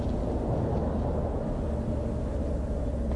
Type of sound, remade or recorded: recorded